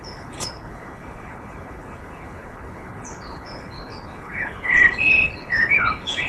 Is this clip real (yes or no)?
no